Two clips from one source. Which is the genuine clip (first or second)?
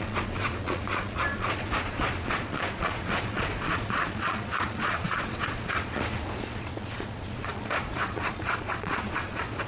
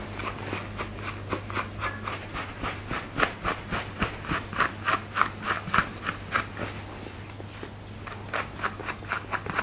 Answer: second